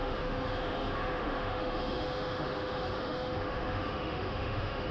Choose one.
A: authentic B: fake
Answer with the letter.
B